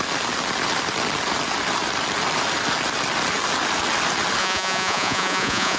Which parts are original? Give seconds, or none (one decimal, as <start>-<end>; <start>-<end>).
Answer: 0.0-4.4